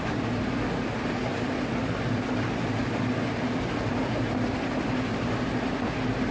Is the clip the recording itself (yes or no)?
no